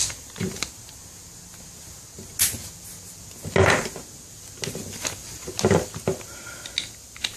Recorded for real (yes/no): yes